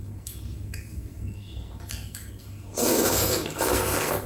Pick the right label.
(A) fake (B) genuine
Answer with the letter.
A